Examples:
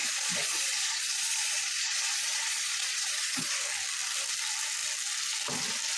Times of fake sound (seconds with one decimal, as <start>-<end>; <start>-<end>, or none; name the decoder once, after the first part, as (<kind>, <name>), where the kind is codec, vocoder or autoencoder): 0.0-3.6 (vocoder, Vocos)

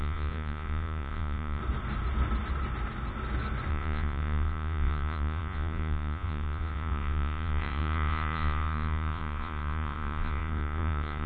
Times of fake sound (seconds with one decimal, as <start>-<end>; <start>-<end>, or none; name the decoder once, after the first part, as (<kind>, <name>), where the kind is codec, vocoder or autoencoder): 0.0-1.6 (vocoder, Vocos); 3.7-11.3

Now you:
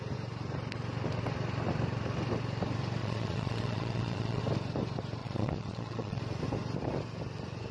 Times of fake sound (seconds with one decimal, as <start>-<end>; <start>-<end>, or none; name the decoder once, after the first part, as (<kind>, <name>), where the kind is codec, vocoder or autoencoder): 3.0-4.4 (vocoder, Vocos); 5.2-6.2